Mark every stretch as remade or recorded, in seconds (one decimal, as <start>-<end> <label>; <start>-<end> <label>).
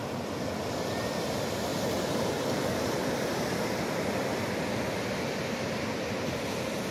0.0-6.9 recorded